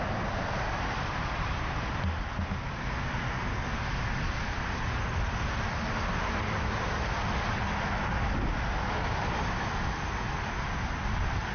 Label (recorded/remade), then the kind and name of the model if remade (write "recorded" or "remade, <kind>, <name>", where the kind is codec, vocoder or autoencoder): recorded